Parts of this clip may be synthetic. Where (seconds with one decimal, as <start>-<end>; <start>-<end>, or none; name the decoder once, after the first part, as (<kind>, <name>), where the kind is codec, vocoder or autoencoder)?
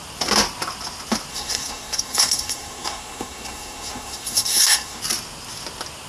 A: 1.3-5.0 (codec, SNAC)